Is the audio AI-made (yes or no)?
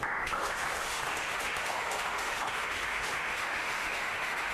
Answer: yes